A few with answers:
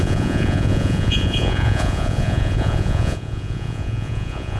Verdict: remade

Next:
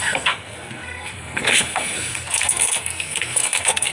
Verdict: remade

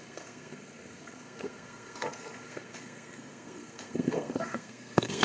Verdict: remade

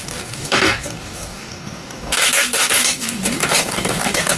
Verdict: remade